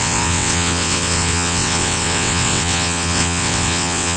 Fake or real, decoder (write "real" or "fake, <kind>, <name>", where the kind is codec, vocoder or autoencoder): fake, vocoder, WaveNeXt